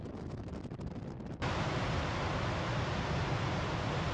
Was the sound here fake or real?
real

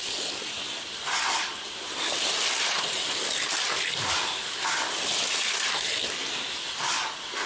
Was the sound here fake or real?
real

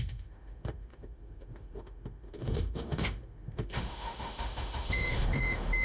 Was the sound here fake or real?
fake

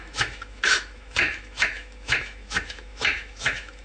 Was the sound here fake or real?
fake